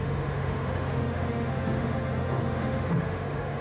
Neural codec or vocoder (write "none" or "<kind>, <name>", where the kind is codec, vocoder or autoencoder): autoencoder, DAC-VAE